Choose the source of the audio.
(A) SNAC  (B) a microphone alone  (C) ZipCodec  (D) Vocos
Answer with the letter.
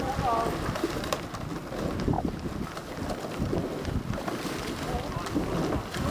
B